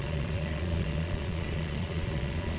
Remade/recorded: remade